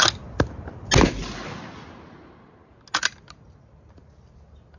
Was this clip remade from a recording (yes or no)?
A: no